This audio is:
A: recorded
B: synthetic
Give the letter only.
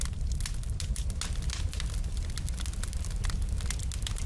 A